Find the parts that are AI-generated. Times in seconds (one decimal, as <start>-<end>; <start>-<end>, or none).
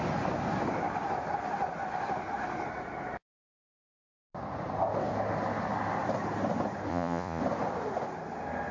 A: 6.9-7.4